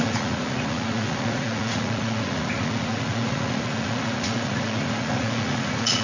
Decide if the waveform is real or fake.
fake